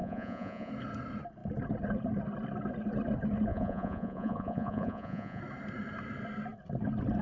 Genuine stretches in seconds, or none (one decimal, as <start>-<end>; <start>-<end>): 0.7-3.5; 5.4-7.2